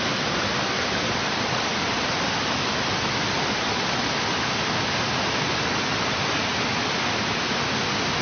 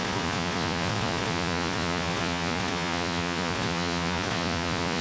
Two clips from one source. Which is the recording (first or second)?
first